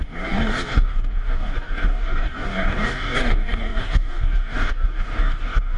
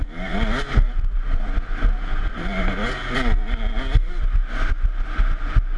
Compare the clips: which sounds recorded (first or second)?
second